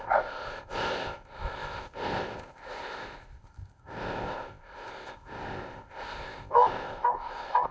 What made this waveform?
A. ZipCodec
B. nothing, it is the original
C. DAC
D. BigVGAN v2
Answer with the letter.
A